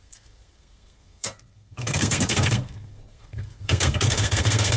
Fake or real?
fake